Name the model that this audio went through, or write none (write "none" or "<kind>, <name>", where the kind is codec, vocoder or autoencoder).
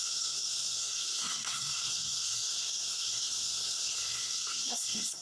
codec, SNAC